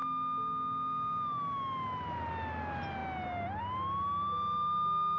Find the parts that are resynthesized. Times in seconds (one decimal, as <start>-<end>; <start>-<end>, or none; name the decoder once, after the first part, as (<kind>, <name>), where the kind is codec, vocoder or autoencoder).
none